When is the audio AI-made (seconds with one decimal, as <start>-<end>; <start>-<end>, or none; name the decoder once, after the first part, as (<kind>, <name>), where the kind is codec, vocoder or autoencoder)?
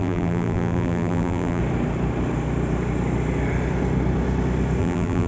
0.0-1.6 (vocoder, BigVGAN v2); 4.8-5.3